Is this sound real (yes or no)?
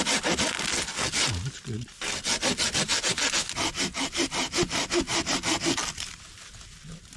yes